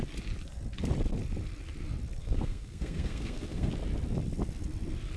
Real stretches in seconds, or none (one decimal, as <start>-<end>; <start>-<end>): 0.0-2.2; 3.7-5.2